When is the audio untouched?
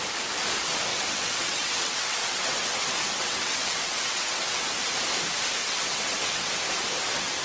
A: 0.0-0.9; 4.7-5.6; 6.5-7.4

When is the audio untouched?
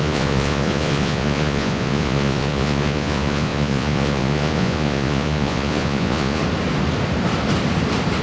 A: 6.4-8.2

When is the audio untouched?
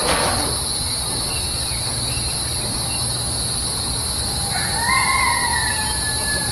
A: 0.0-6.5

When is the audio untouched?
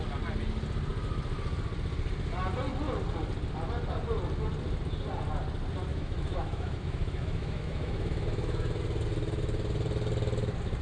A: 0.0-5.9; 8.8-10.8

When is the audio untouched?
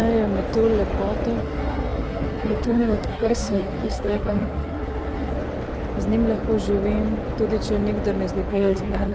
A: 0.0-1.4; 5.3-8.5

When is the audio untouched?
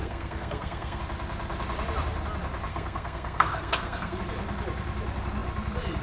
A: 1.0-2.7; 4.2-6.0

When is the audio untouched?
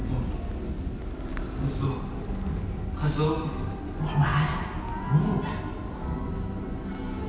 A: 0.0-7.3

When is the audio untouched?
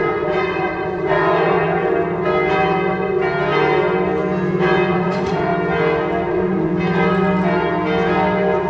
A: 1.8-4.9; 5.5-6.3; 6.7-8.7